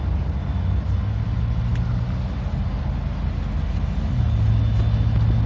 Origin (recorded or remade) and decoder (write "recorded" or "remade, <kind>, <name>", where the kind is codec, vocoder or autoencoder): recorded